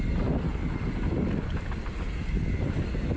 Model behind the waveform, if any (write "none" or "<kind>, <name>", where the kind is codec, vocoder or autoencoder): none